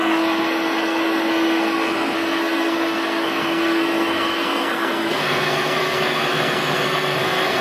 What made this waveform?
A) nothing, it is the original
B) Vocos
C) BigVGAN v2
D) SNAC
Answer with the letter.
D